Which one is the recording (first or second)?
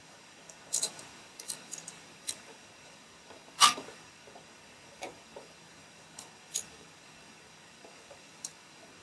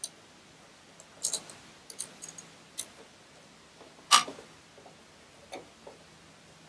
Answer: second